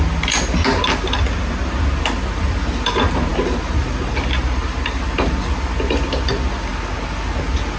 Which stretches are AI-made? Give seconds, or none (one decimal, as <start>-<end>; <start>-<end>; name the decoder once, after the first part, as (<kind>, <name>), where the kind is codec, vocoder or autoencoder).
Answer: none